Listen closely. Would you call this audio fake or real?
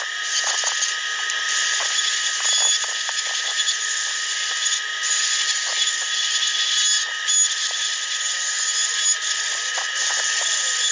real